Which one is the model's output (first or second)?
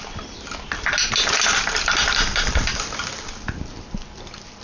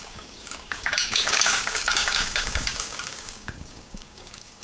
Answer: second